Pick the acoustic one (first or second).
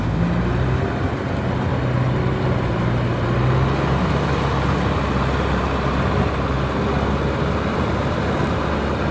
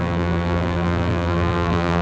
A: first